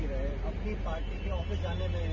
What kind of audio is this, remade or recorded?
recorded